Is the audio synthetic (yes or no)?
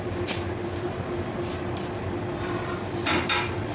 no